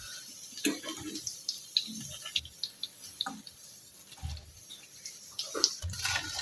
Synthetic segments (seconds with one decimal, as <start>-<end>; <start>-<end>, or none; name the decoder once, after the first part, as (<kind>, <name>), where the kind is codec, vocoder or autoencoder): none